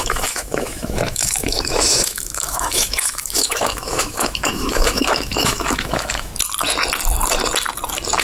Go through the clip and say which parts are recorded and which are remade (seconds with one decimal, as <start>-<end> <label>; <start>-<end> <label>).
0.0-6.3 remade; 6.3-8.2 recorded